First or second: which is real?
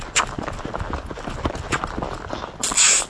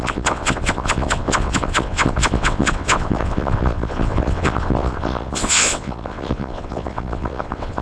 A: first